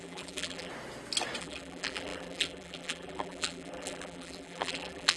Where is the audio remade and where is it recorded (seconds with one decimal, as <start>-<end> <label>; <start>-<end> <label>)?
0.0-0.7 remade; 0.7-1.4 recorded; 1.4-5.2 remade